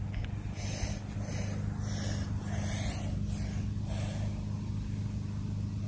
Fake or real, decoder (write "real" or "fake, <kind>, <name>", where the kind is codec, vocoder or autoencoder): real